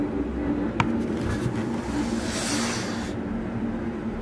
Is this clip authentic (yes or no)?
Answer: yes